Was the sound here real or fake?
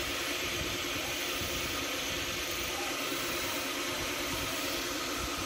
fake